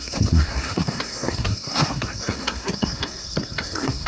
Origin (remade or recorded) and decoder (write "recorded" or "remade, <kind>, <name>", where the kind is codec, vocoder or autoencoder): remade, codec, SNAC